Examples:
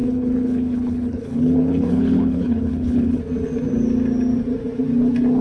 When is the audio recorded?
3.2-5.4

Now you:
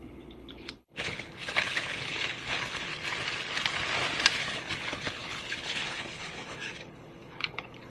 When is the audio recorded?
2.9-4.4

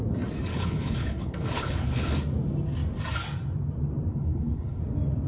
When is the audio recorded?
0.0-0.5; 2.2-4.1; 4.8-5.3